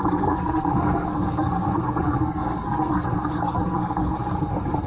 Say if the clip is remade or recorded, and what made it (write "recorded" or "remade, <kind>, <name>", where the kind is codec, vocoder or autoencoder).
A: remade, codec, SNAC